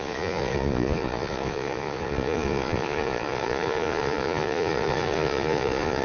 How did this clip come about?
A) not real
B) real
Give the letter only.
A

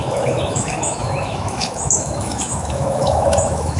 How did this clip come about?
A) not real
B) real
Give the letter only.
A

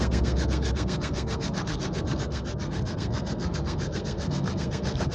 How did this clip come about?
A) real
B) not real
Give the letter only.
B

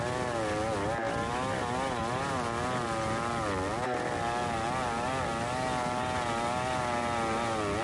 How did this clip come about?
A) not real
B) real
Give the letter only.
B